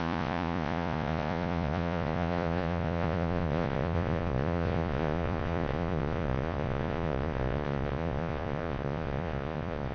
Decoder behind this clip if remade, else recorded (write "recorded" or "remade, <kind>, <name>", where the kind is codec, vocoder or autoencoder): remade, vocoder, Vocos